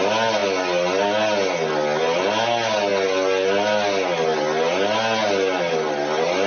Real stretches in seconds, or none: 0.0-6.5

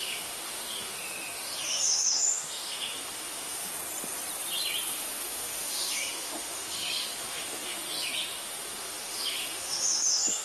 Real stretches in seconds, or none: 3.7-4.9

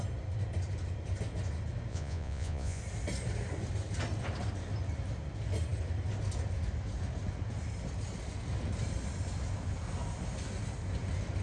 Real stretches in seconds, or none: 0.0-1.9; 2.8-11.4

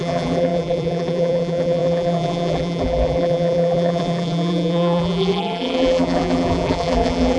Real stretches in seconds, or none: none

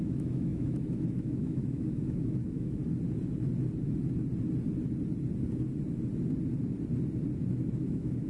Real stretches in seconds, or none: 2.8-7.8